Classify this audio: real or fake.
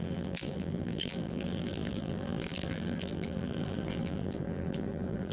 fake